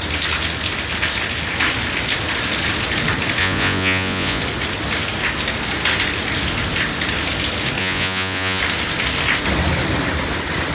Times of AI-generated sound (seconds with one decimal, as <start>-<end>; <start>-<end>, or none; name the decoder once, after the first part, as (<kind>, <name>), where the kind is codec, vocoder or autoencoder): 3.4-4.4 (vocoder, Vocos); 7.8-8.6